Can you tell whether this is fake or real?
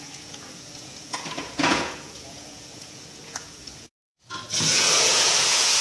fake